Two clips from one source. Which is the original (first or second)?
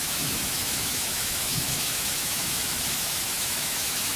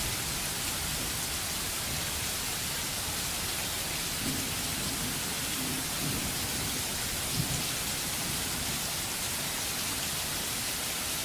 second